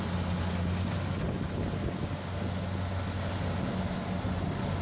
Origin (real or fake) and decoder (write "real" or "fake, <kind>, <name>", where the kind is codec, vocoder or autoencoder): real